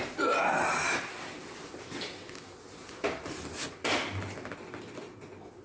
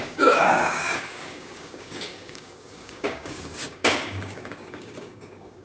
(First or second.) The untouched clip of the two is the first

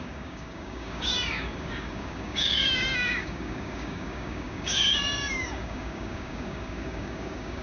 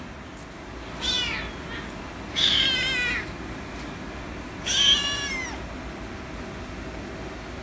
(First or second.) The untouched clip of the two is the second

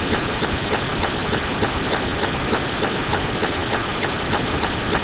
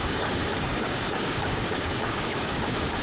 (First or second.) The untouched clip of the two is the first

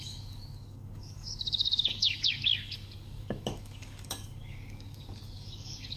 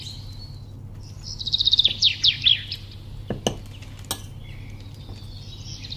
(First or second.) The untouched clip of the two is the second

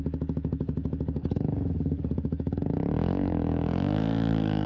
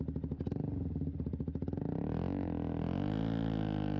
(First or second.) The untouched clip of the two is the second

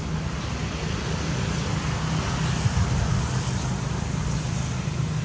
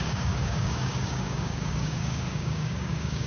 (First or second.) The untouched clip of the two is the first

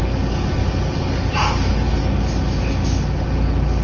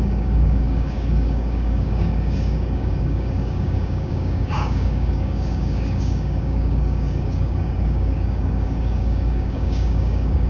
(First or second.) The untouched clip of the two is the first